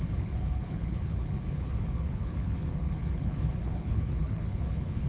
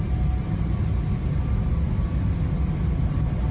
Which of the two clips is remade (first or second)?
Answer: first